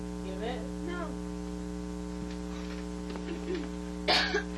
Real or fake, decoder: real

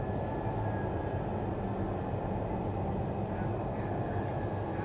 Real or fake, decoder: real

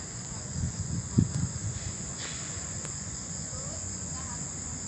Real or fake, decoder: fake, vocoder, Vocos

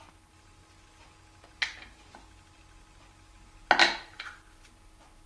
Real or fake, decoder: real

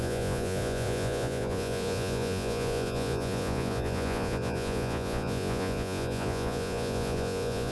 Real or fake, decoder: fake, vocoder, Vocos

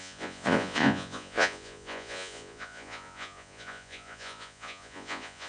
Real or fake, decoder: fake, vocoder, Vocos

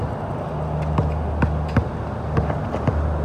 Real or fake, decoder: real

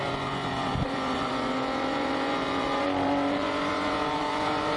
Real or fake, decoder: fake, vocoder, Vocos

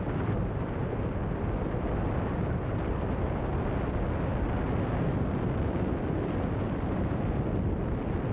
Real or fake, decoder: real